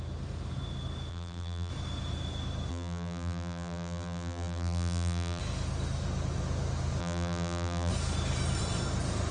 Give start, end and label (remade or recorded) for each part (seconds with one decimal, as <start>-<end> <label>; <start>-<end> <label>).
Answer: 0.0-1.1 recorded; 1.1-1.7 remade; 1.7-2.7 recorded; 2.7-5.4 remade; 5.4-7.0 recorded; 7.0-7.9 remade; 7.9-9.3 recorded